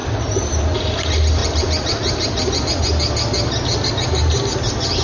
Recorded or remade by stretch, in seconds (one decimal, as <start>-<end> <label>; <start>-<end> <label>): 0.0-5.0 recorded